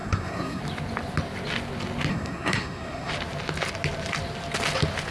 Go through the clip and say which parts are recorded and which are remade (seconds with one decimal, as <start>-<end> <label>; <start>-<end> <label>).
0.0-0.6 remade; 0.6-2.1 recorded; 2.1-3.1 remade; 3.1-5.1 recorded